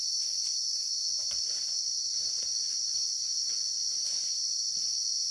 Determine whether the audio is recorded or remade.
recorded